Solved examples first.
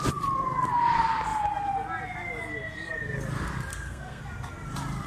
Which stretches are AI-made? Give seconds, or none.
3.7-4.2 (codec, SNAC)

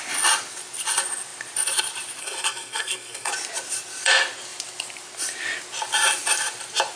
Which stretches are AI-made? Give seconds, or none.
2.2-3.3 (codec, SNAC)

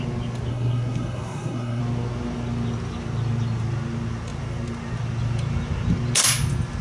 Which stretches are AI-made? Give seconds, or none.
0.5-1.8 (codec, SNAC)

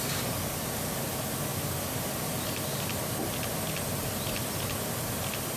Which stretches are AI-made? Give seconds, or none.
none